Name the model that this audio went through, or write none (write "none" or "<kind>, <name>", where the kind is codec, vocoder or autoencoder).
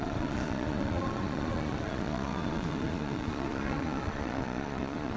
vocoder, Vocos